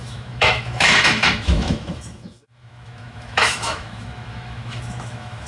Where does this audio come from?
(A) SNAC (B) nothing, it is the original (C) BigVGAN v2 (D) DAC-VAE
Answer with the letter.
D